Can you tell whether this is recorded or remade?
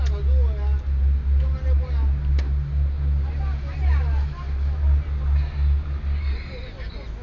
recorded